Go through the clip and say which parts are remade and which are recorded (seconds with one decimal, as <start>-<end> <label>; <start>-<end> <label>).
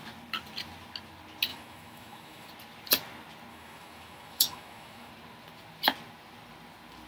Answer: 0.0-1.5 recorded; 1.5-2.5 remade; 2.5-3.5 recorded; 3.5-5.1 remade; 5.1-7.1 recorded